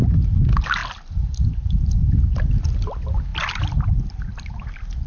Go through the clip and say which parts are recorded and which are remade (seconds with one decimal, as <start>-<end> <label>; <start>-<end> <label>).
0.0-2.0 remade; 2.0-2.6 recorded; 2.6-3.3 remade; 3.3-4.1 recorded; 4.1-5.1 remade